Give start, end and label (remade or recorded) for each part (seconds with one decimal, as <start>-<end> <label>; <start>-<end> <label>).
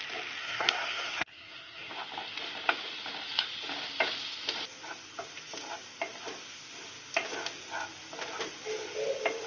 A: 0.0-0.4 recorded; 0.4-1.9 remade; 1.9-9.5 recorded